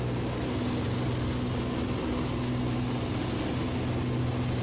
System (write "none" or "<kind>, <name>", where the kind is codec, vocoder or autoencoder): none